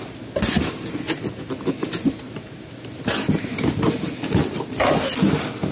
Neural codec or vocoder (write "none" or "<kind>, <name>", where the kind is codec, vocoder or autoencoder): none